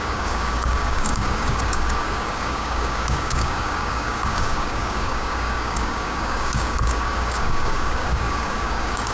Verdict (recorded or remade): remade